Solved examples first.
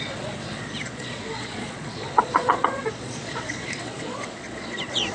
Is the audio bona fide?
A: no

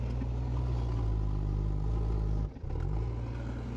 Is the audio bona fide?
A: yes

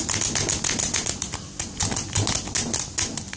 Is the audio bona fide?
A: yes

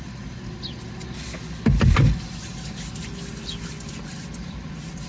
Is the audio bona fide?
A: yes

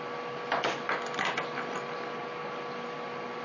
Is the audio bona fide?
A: yes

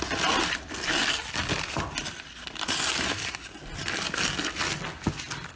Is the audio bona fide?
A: yes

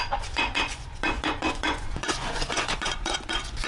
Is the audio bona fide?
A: no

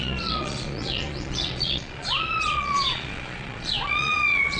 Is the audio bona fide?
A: no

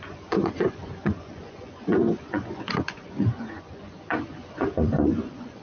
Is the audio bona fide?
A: no